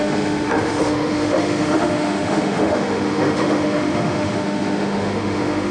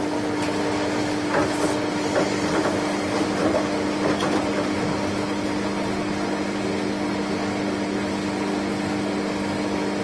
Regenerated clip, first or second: first